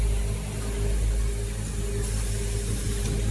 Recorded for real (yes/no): yes